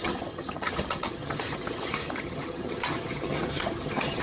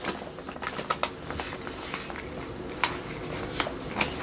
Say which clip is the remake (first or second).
first